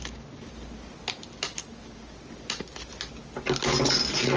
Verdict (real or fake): real